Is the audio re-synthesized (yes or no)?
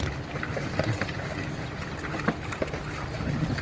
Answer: no